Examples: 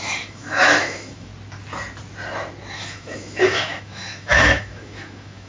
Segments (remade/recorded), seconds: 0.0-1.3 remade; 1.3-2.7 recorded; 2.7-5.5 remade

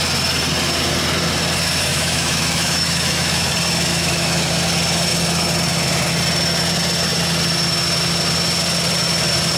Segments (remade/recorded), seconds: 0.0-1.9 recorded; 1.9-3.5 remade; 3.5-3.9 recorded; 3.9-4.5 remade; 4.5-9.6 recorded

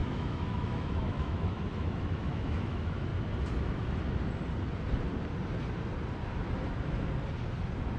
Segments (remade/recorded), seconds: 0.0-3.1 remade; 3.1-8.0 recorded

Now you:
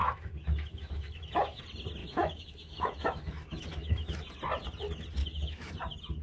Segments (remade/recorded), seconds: 0.0-1.6 remade; 1.6-2.0 recorded; 2.0-4.3 remade; 4.3-5.2 recorded; 5.2-5.7 remade; 5.7-6.2 recorded

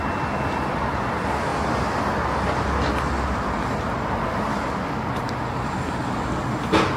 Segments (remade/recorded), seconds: 0.0-7.0 recorded

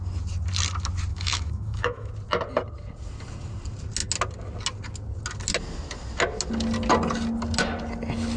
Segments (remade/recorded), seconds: 0.0-1.1 recorded; 1.1-2.1 remade; 2.1-8.4 recorded

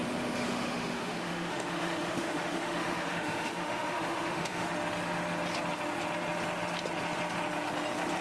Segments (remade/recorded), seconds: 0.0-4.7 remade; 4.7-8.2 recorded